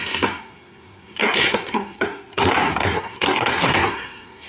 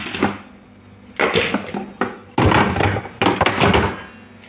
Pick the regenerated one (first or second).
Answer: first